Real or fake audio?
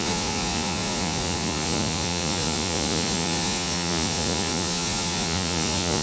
fake